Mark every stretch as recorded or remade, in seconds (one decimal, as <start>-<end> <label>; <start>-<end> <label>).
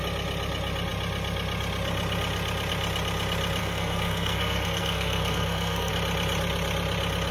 0.0-3.6 recorded; 3.6-5.9 remade; 5.9-7.3 recorded